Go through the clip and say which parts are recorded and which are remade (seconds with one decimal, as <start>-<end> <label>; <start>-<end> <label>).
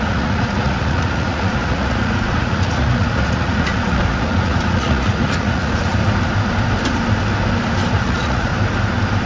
0.0-5.9 remade; 5.9-7.9 recorded; 7.9-8.5 remade; 8.5-9.3 recorded